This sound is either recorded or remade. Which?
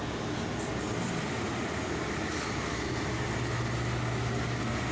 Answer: recorded